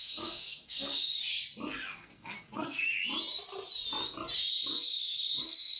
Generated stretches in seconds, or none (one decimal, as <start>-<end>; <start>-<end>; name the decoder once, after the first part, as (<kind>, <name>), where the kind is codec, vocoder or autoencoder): 0.0-1.2 (codec, SNAC); 2.0-3.0; 4.5-5.8